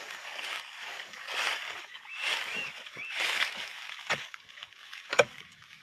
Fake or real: fake